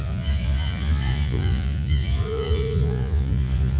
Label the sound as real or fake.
fake